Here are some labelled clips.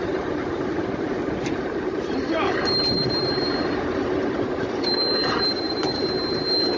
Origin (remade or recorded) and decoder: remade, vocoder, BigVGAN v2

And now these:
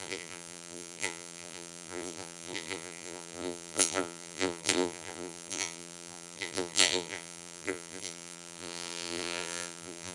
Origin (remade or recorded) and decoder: remade, vocoder, BigVGAN v2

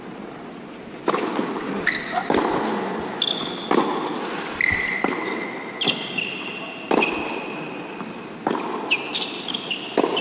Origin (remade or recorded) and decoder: recorded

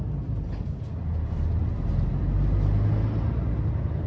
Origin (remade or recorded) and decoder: recorded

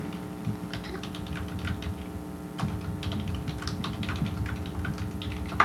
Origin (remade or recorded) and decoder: recorded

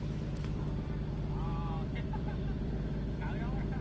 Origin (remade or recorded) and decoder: remade, vocoder, BigVGAN v2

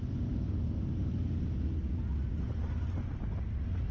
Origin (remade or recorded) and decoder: recorded